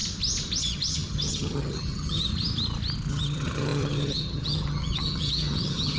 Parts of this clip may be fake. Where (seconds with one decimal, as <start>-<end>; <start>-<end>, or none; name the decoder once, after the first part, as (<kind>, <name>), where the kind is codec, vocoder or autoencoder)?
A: 0.6-2.3 (vocoder, HiFi-GAN); 3.1-6.0